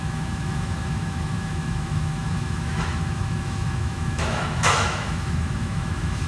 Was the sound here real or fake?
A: fake